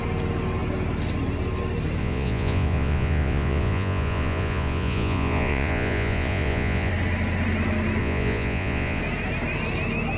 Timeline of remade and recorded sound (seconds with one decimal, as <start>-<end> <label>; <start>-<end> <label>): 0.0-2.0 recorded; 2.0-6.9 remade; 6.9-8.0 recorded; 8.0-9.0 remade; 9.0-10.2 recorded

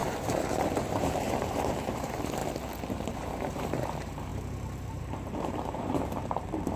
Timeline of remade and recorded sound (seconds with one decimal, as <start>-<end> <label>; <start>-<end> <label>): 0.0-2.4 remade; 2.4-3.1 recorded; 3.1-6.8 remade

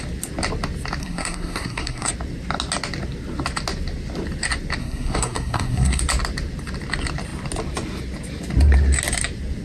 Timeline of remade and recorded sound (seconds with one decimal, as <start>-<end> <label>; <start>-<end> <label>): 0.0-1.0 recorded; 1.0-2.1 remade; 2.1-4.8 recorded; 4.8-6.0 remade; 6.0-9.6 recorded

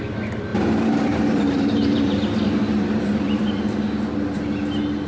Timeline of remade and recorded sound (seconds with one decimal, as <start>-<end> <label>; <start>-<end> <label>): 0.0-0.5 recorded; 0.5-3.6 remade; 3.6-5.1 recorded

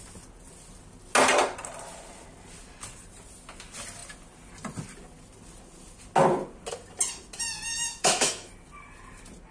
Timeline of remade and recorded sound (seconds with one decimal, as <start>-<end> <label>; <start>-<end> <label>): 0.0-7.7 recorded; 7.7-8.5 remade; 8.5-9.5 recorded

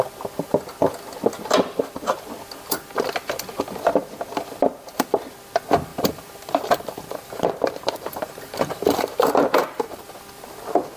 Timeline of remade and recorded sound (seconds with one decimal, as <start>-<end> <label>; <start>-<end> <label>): 0.0-5.9 recorded; 5.9-10.0 remade; 10.0-11.0 recorded